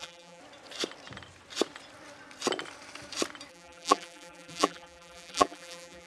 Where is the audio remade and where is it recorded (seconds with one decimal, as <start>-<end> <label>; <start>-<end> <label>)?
0.0-0.4 remade; 0.4-3.5 recorded; 3.5-6.1 remade